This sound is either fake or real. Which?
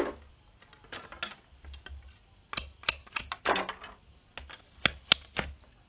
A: real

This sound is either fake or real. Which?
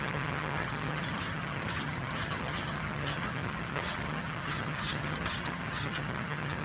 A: fake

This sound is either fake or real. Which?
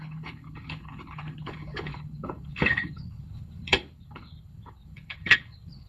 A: fake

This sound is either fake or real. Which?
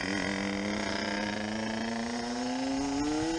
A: real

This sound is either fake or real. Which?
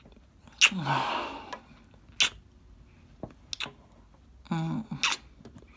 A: real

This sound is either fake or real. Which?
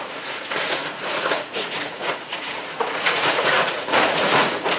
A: fake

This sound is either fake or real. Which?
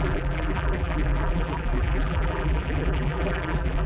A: fake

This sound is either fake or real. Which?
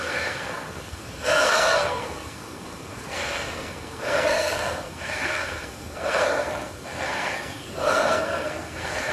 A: fake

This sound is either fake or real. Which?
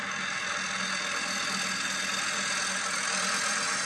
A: real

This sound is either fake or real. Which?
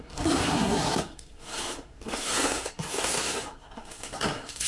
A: fake